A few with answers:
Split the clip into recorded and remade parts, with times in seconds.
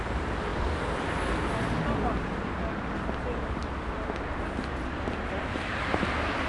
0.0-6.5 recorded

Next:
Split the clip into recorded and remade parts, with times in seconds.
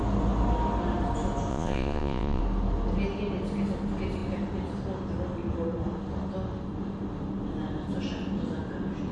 0.0-1.5 recorded; 1.5-2.4 remade; 2.4-9.1 recorded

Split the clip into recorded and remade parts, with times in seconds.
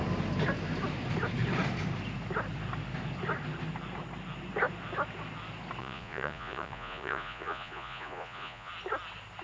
0.0-5.8 recorded; 5.8-8.7 remade; 8.7-9.4 recorded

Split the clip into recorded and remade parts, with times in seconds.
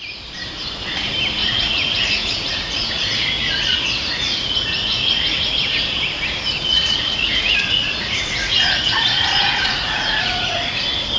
0.0-1.4 recorded; 1.4-5.5 remade; 5.5-6.6 recorded; 6.6-10.7 remade; 10.7-11.2 recorded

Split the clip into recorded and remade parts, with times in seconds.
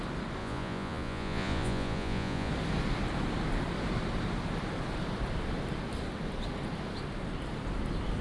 0.0-0.4 recorded; 0.4-2.5 remade; 2.5-8.2 recorded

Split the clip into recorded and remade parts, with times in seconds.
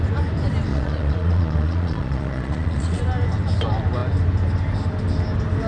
0.0-0.7 recorded; 0.7-3.0 remade; 3.0-5.7 recorded